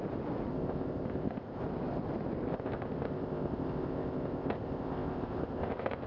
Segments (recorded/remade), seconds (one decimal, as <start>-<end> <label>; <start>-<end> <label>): 0.0-0.5 recorded; 0.5-1.6 remade; 1.6-2.5 recorded; 2.5-6.1 remade